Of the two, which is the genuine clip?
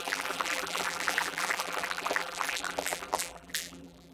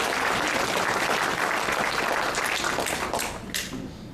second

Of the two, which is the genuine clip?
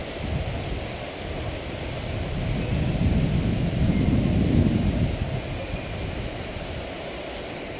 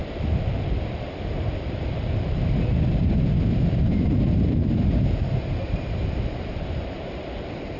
first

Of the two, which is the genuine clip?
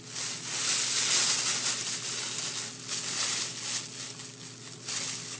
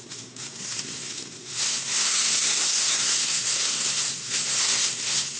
first